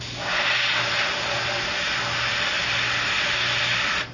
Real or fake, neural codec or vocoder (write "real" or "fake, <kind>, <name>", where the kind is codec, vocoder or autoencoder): real